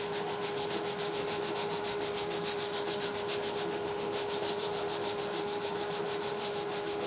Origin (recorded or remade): remade